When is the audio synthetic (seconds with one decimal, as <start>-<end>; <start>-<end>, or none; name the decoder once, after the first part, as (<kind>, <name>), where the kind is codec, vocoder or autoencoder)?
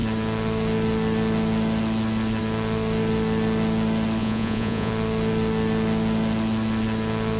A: 4.2-4.9 (vocoder, Vocos)